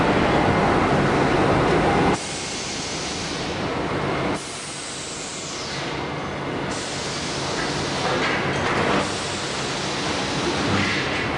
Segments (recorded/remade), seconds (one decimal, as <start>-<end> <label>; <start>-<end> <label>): 0.0-11.4 recorded